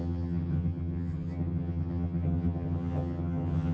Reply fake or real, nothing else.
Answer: fake